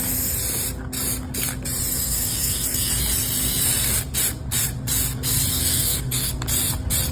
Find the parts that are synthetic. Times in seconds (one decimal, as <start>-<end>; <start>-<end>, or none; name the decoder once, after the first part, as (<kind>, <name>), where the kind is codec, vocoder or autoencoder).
1.9-2.9 (codec, SNAC); 5.5-6.3